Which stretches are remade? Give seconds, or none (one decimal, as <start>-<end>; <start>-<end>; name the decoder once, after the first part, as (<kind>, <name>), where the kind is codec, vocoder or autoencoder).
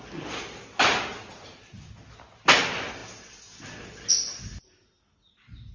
none